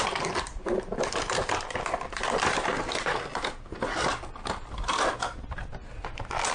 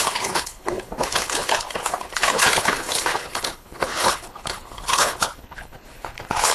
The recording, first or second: first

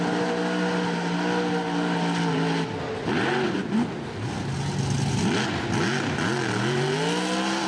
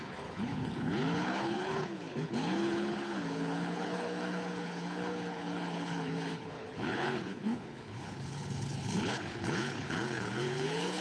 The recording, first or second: first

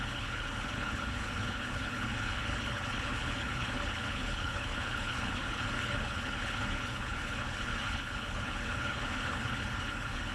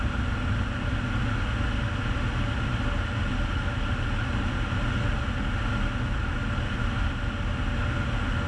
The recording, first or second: second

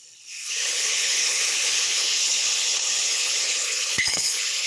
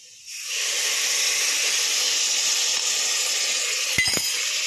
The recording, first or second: second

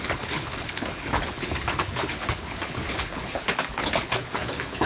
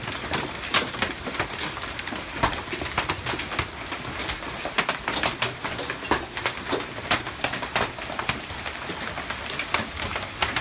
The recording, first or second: second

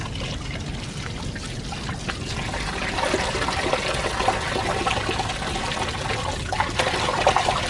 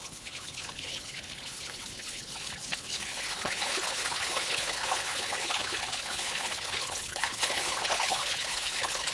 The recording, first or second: first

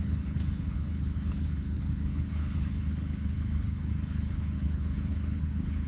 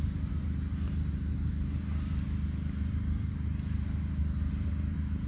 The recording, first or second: second